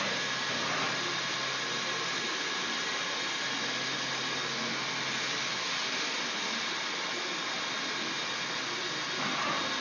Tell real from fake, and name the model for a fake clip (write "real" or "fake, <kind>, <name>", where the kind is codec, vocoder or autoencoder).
real